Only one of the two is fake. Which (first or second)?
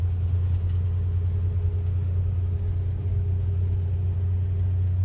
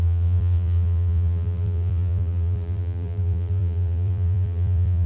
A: second